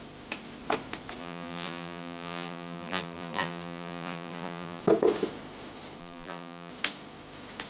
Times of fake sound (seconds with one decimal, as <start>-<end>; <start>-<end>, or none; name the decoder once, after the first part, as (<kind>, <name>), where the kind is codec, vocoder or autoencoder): 1.2-4.8 (vocoder, BigVGAN v2); 6.0-6.7